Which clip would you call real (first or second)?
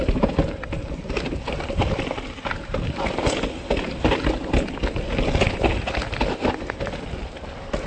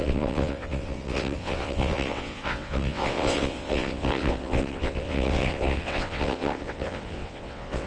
first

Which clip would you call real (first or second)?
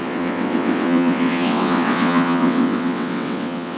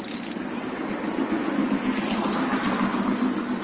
second